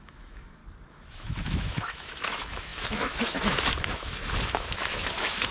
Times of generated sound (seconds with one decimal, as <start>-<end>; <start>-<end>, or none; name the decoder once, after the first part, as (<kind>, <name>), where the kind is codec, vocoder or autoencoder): 0.0-0.6 (autoencoder, DAC-VAE); 1.1-5.5